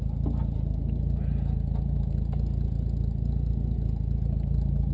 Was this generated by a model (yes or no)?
no